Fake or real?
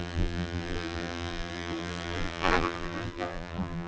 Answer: fake